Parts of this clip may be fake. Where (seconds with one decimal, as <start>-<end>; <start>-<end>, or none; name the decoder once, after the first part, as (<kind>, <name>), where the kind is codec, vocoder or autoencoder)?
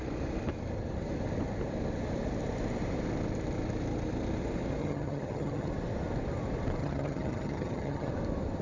4.8-5.7 (vocoder, HiFi-GAN); 6.8-8.1